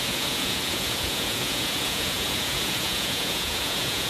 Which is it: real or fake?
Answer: fake